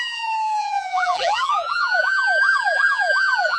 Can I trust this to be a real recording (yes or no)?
no